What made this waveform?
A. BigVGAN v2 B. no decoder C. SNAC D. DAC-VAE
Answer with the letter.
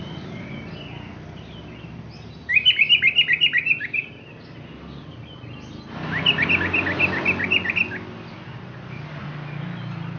B